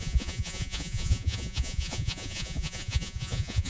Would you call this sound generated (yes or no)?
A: yes